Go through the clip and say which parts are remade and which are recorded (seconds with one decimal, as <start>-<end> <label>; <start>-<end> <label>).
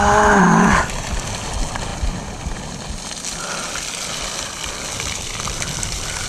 0.0-6.3 recorded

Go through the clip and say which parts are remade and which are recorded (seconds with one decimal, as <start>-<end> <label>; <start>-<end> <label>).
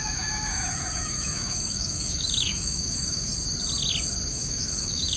0.0-3.3 remade; 3.3-4.3 recorded; 4.3-5.2 remade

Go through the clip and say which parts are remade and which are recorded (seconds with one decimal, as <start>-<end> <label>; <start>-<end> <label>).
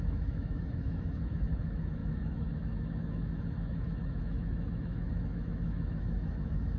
0.0-6.8 remade